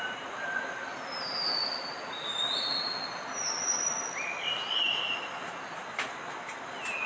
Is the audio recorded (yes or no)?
yes